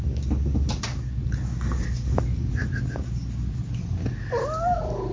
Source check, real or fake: real